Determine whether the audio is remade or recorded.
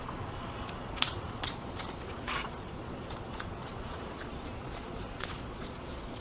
remade